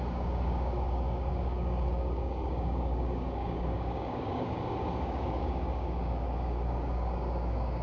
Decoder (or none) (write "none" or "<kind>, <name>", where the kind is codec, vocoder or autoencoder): codec, DAC